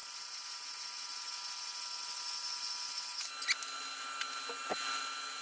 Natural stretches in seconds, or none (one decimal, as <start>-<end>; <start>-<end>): 0.0-5.4